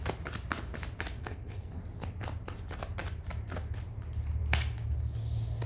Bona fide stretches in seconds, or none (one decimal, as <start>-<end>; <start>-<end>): 0.0-1.2; 1.8-5.7